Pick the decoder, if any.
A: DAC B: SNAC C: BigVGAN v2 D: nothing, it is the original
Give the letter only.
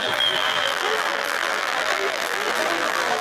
C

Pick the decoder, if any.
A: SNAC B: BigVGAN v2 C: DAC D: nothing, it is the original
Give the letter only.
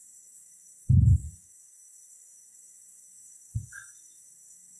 C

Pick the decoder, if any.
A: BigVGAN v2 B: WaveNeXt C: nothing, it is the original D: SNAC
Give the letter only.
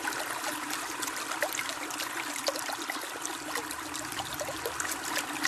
C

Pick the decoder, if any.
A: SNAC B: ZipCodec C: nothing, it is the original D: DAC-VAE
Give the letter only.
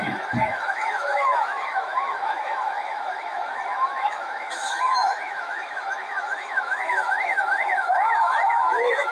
D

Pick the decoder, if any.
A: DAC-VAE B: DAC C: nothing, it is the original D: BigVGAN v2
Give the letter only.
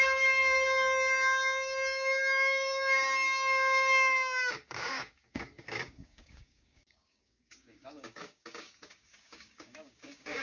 B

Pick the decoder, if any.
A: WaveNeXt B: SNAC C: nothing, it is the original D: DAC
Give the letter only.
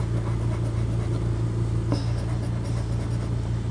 C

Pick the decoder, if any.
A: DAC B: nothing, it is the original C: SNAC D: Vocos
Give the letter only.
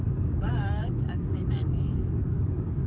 A